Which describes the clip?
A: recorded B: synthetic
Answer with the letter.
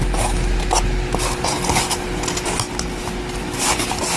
A